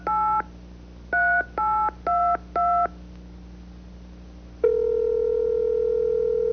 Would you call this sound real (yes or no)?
yes